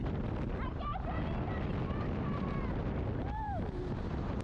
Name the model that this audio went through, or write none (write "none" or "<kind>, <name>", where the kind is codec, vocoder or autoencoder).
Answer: none